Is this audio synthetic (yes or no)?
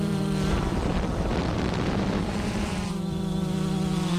yes